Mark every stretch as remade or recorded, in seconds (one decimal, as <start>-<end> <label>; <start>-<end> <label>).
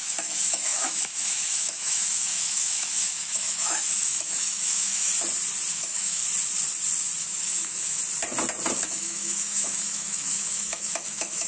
0.0-5.1 remade; 5.1-5.7 recorded; 5.7-6.2 remade; 6.2-7.2 recorded; 7.2-8.0 remade; 8.0-8.8 recorded; 8.8-11.5 remade